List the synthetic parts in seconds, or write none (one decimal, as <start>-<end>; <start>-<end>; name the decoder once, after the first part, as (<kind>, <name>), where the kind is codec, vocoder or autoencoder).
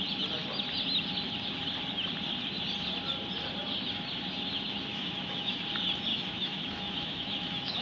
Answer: 4.9-5.6 (autoencoder, DAC-VAE); 6.1-7.8